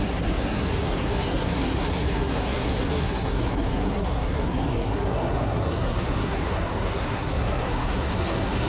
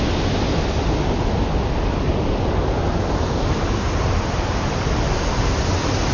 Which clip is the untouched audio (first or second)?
second